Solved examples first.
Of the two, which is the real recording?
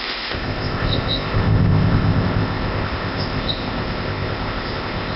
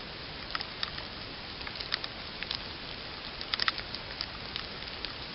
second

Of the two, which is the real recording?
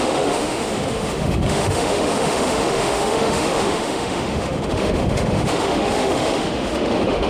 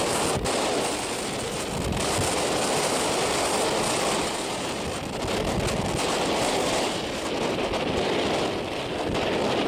second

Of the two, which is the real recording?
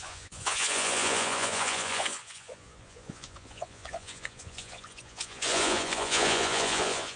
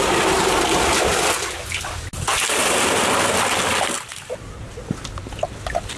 second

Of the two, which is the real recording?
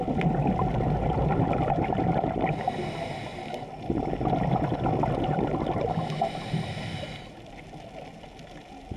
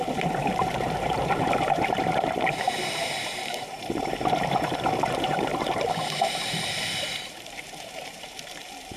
first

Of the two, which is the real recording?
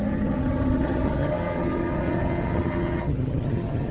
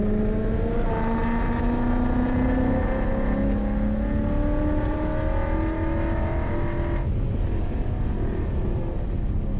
second